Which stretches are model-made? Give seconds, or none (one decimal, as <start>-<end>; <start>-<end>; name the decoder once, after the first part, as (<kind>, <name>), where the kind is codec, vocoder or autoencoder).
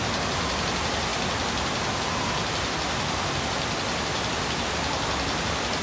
none